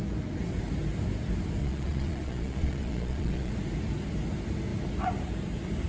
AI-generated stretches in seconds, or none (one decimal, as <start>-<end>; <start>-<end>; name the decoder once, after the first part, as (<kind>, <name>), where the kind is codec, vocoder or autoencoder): 1.6-3.5 (vocoder, Vocos)